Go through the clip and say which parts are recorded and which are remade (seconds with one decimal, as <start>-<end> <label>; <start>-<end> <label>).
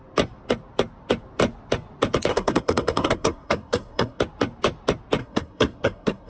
0.0-2.3 recorded; 2.3-4.2 remade; 4.2-5.2 recorded; 5.2-6.3 remade